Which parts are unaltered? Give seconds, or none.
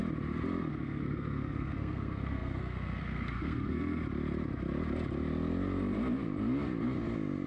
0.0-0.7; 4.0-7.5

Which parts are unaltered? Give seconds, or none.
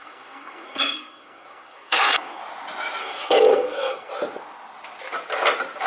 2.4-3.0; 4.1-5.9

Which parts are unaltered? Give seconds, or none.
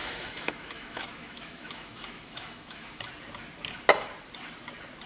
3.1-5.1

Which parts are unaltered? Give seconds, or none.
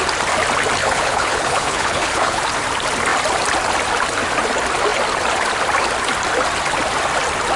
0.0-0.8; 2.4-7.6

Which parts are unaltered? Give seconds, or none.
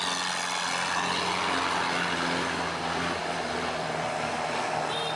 0.0-3.2; 4.3-5.2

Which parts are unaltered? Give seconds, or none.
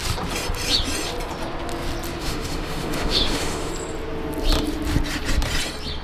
0.0-2.2; 3.7-6.0